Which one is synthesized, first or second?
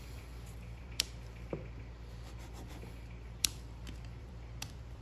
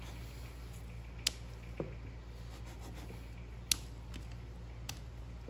first